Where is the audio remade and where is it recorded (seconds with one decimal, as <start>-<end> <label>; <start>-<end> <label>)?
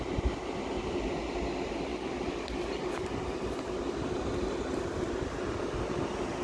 0.0-6.4 recorded